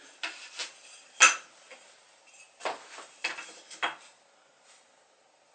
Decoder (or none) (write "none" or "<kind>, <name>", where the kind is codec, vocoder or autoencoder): none